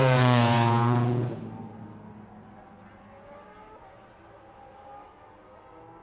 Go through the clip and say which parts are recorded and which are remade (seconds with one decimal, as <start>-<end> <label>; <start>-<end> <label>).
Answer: 0.0-1.4 remade; 1.4-6.0 recorded

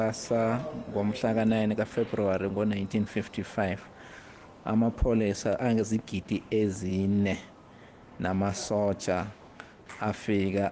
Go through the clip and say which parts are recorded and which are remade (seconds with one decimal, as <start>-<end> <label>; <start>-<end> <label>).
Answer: 0.0-4.4 recorded; 4.4-5.6 remade; 5.6-6.9 recorded; 6.9-8.1 remade; 8.1-8.6 recorded; 8.6-9.8 remade; 9.8-10.7 recorded

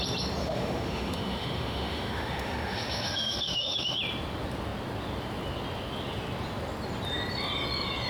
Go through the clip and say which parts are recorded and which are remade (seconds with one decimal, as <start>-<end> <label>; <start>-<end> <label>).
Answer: 0.0-0.4 recorded; 0.4-4.0 remade; 4.0-8.1 recorded

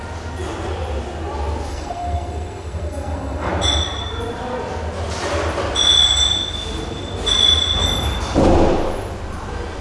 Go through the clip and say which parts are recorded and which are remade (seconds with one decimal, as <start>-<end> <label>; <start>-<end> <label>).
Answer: 0.0-1.7 recorded; 1.7-3.5 remade; 3.5-9.8 recorded

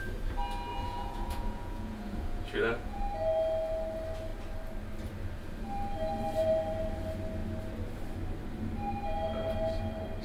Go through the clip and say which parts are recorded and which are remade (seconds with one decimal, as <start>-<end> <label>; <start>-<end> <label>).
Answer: 0.0-0.7 recorded; 0.7-3.0 remade; 3.0-10.2 recorded

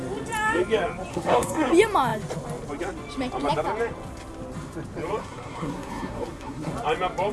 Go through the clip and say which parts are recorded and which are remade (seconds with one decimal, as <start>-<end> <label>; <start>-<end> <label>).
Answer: 0.0-1.1 recorded; 1.1-1.7 remade; 1.7-5.2 recorded; 5.2-6.7 remade; 6.7-7.3 recorded